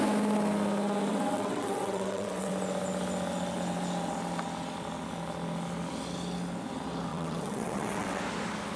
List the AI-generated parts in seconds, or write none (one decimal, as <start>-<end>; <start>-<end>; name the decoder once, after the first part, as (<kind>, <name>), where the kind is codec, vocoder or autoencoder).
1.1-2.5 (vocoder, WaveNeXt); 7.1-8.2